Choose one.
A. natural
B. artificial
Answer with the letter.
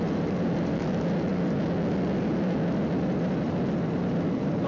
A